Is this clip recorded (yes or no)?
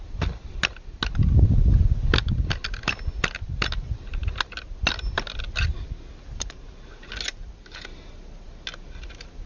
yes